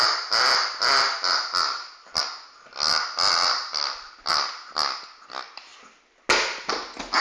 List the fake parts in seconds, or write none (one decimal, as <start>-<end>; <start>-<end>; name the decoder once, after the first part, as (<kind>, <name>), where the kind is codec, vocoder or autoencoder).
3.5-4.3 (vocoder, BigVGAN v2)